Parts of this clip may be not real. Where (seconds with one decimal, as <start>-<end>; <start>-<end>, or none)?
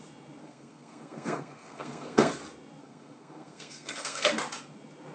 0.4-2.3; 2.8-4.3